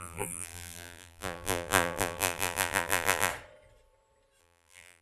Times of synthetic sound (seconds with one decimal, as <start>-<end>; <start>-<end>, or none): 0.0-3.3; 4.4-5.0